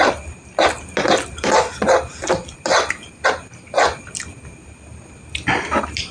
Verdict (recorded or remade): recorded